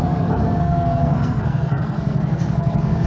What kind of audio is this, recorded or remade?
remade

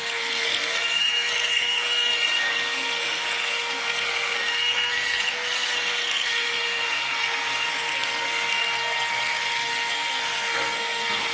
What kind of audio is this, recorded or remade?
remade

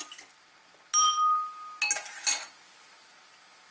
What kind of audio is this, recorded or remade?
recorded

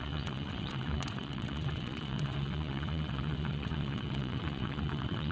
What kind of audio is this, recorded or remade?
remade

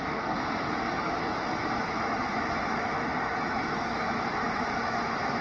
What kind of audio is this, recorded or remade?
remade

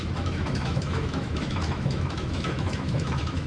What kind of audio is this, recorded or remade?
remade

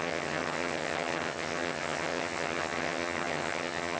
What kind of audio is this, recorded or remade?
remade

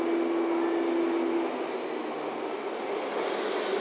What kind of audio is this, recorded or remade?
recorded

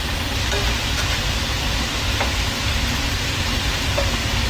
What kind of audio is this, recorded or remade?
remade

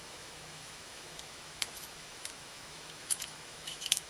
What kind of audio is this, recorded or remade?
remade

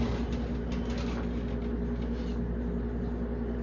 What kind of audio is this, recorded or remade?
recorded